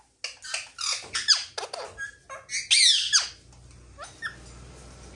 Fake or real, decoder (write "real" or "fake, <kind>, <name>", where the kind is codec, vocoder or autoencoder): real